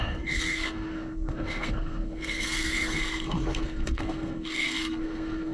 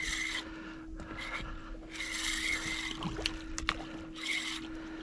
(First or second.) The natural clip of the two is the second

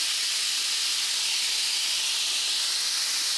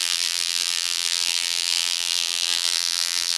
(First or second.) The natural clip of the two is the first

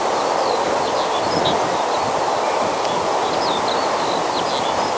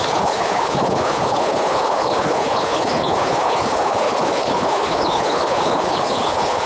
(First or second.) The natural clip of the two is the first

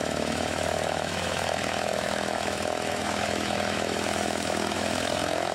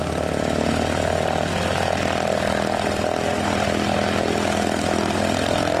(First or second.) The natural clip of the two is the second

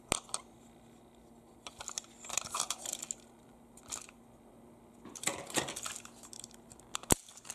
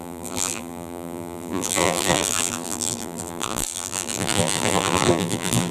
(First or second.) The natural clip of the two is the first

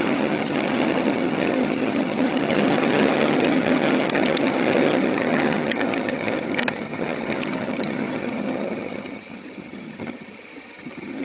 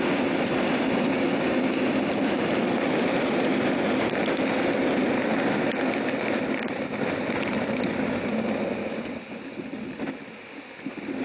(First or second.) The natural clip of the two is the second